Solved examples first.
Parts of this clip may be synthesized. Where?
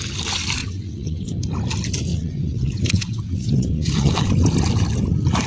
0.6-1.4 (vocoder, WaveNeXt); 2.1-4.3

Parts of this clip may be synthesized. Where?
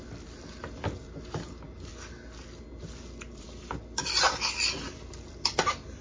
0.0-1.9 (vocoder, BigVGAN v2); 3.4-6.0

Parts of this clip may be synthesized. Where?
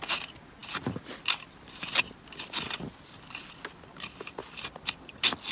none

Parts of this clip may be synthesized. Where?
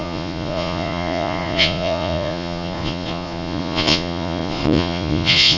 0.0-5.6 (vocoder, Vocos)